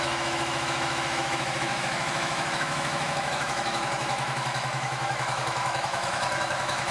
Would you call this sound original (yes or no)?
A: no